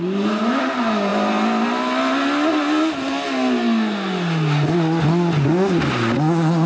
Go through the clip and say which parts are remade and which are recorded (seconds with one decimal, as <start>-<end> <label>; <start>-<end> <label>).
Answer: 0.0-6.7 recorded

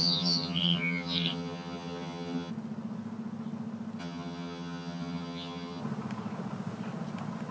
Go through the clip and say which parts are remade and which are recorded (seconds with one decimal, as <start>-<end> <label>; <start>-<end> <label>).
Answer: 0.0-2.5 remade; 2.5-4.0 recorded; 4.0-5.8 remade; 5.8-7.5 recorded

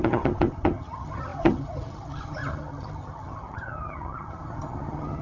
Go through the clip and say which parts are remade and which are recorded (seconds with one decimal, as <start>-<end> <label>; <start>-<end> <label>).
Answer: 0.0-5.2 remade

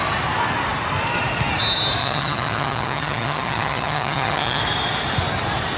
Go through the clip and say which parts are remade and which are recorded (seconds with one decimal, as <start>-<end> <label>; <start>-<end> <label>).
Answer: 0.0-2.0 recorded; 2.0-4.6 remade; 4.6-5.8 recorded

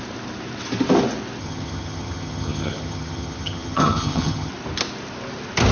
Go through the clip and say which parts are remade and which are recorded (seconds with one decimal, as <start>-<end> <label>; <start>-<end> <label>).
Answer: 0.0-1.4 recorded; 1.4-4.5 remade; 4.5-5.7 recorded

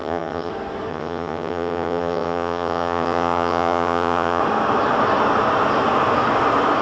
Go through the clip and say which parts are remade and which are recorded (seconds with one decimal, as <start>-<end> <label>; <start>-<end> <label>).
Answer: 0.0-0.5 remade; 0.5-0.9 recorded; 0.9-4.4 remade; 4.4-6.8 recorded